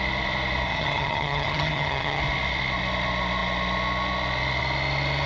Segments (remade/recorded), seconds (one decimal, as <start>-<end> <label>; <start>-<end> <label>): 0.0-0.7 recorded; 0.7-2.2 remade; 2.2-5.3 recorded